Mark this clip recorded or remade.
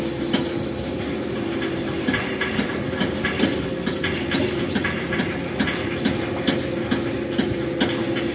recorded